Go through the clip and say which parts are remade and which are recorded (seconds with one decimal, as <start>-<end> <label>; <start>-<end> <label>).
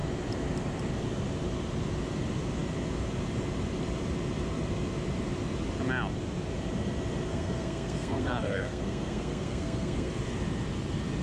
0.0-7.3 recorded; 7.3-10.1 remade; 10.1-11.2 recorded